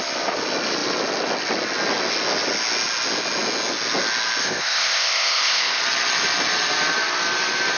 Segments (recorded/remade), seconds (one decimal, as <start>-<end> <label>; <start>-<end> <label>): 0.0-4.4 recorded; 4.4-5.8 remade; 5.8-7.8 recorded